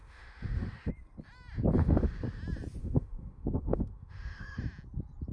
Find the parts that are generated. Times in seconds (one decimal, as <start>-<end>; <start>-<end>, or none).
0.0-0.9; 1.8-2.4; 2.8-4.6